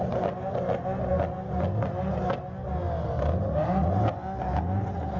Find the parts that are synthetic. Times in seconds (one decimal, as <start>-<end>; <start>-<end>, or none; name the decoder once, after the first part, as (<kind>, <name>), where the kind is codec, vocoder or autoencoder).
none